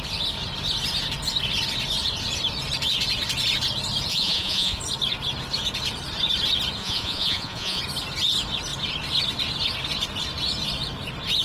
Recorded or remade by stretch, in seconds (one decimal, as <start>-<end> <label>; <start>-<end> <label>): 0.0-4.1 recorded; 4.1-4.8 remade; 4.8-6.8 recorded; 6.8-7.8 remade; 7.8-11.4 recorded